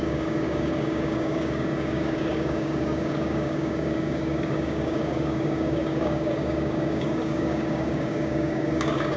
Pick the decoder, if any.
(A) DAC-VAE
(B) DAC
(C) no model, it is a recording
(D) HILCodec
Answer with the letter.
B